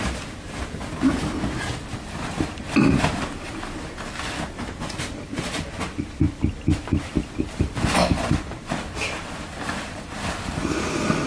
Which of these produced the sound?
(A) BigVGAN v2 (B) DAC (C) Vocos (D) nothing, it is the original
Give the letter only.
A